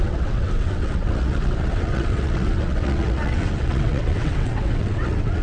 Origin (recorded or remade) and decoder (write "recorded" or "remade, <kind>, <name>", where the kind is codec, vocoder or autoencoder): remade, vocoder, WaveNeXt